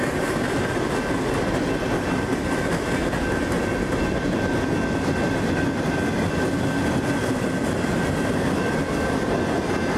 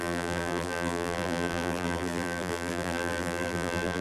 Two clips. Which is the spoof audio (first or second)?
second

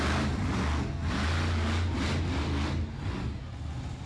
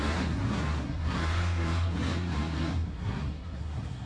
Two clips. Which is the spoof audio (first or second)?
second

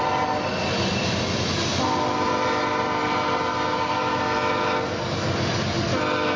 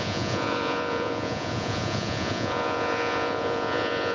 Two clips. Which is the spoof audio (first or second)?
second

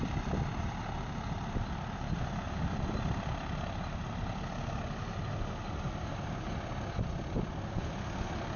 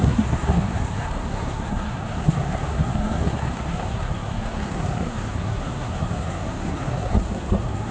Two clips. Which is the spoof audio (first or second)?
second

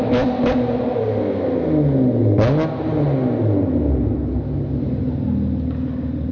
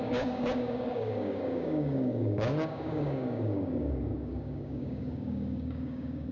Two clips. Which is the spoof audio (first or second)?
second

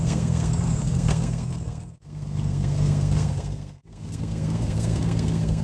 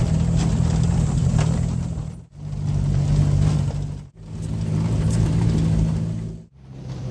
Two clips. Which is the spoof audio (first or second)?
first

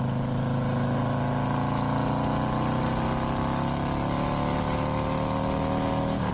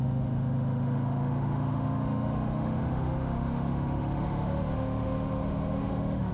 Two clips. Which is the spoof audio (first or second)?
second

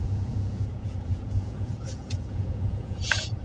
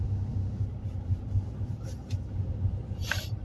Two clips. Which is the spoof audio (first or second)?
first